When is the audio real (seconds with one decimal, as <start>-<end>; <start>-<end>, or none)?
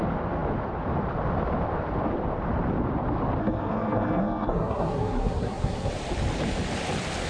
0.0-3.4; 5.9-7.3